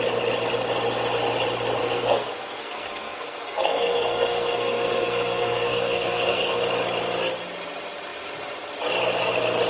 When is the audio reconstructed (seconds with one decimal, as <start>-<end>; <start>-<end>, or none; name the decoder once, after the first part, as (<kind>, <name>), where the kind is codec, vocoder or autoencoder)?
1.8-6.6 (codec, SNAC)

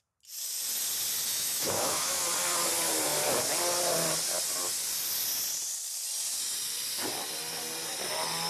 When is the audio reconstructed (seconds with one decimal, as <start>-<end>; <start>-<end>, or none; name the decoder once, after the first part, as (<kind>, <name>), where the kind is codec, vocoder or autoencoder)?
1.3-2.2 (autoencoder, DAC-VAE)

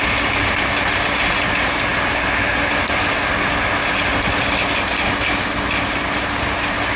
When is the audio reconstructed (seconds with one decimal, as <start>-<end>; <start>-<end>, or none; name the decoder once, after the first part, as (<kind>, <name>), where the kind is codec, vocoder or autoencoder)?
none